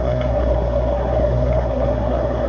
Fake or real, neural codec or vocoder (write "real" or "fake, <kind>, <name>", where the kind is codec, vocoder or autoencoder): fake, codec, SNAC